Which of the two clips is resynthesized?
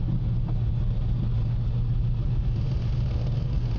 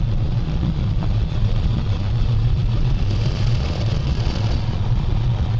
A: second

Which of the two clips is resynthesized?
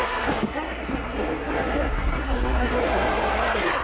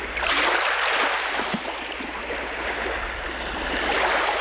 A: first